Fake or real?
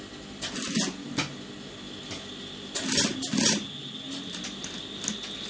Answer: real